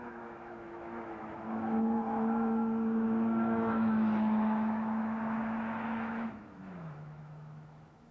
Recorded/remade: remade